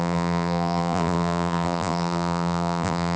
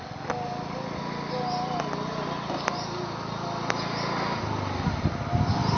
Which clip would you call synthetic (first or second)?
first